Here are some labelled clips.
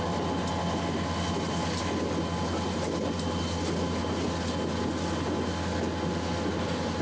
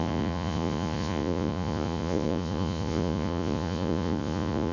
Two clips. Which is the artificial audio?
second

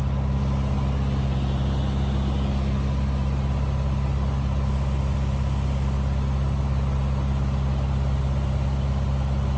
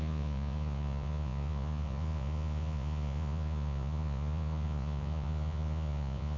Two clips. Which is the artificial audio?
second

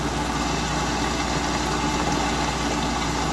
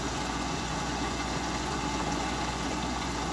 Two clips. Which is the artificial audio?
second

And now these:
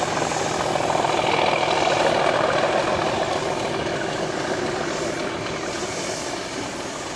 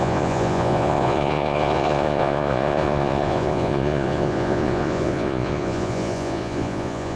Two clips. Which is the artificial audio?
second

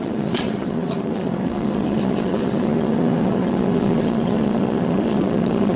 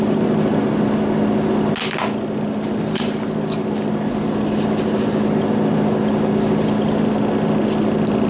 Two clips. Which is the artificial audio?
first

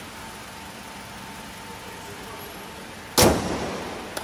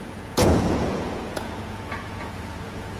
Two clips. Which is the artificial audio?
second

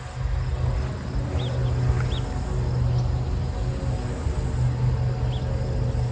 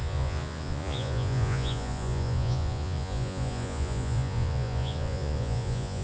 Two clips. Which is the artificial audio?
second